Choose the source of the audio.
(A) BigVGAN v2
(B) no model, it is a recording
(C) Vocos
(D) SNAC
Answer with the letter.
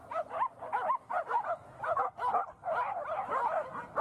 A